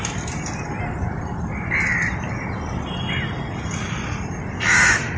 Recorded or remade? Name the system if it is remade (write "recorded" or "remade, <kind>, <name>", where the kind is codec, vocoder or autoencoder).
remade, vocoder, BigVGAN v2